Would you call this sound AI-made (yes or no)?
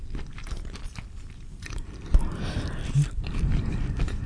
no